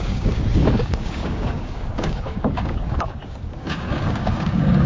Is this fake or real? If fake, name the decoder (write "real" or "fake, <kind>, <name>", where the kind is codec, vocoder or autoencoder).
fake, codec, DAC